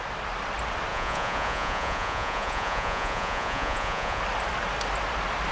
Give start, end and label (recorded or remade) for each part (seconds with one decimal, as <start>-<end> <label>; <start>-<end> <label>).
0.0-0.9 recorded; 0.9-4.2 remade; 4.2-5.5 recorded